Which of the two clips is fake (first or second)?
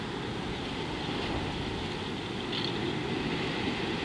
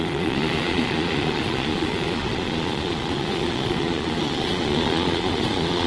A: second